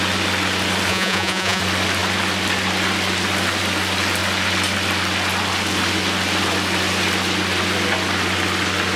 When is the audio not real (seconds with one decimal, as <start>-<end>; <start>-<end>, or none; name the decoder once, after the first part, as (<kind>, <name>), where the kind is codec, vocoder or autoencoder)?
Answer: 0.9-1.6 (vocoder, Vocos)

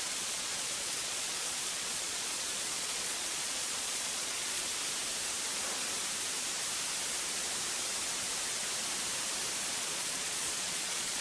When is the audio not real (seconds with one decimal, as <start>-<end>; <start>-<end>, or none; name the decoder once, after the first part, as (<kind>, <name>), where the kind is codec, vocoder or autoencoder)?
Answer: 0.0-4.7 (vocoder, Vocos); 9.7-11.2

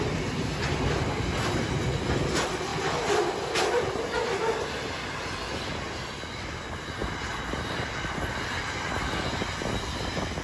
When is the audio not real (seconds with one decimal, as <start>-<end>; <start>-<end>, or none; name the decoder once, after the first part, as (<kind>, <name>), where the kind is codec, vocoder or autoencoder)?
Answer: none

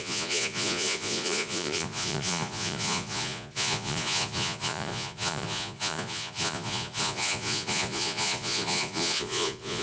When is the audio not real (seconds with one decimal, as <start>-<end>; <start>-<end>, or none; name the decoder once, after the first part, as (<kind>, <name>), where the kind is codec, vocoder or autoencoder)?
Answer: 0.0-9.8 (vocoder, Vocos)

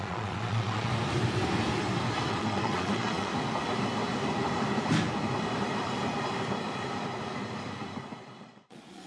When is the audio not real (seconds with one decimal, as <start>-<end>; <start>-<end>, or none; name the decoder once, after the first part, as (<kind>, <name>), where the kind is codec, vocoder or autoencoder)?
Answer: 0.0-0.9 (vocoder, Vocos); 2.3-3.3; 8.4-9.1

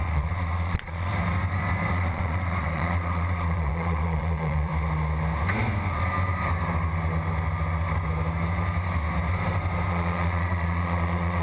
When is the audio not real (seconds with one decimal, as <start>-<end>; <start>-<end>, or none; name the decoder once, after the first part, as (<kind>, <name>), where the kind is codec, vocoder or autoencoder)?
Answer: 0.0-1.1 (vocoder, Vocos); 1.9-4.7; 9.9-11.4

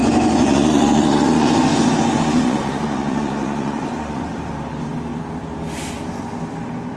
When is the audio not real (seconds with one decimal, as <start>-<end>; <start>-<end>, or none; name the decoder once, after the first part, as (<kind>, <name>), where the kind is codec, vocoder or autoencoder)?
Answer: 0.0-4.2 (vocoder, Vocos)